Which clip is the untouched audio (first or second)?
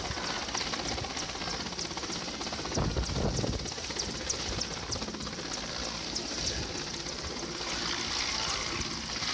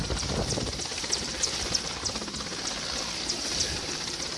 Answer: first